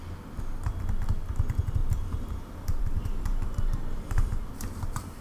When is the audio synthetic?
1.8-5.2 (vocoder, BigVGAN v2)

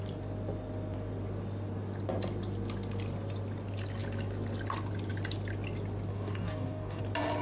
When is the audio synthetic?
6.1-7.0 (codec, DAC)

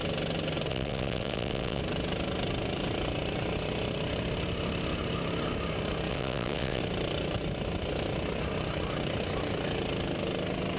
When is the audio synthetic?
0.7-1.8 (vocoder, WaveNeXt); 6.1-6.8

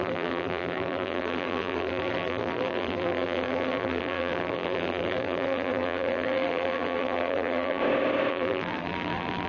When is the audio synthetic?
0.0-7.8 (vocoder, BigVGAN v2); 8.3-9.5

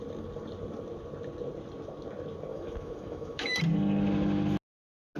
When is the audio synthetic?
2.5-3.6 (autoencoder, DAC-VAE)

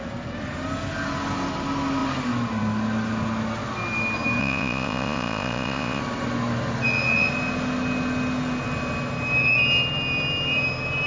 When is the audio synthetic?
4.4-6.0 (vocoder, Vocos)

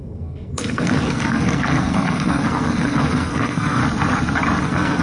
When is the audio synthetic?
0.0-3.8 (codec, SNAC); 4.6-5.0